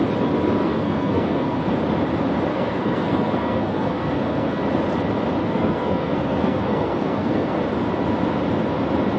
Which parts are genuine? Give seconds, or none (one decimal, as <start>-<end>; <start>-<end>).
0.0-0.6; 1.6-2.5; 4.6-5.4; 7.6-9.2